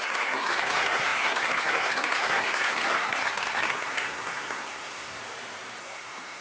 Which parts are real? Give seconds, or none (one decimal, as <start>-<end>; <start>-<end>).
5.2-5.8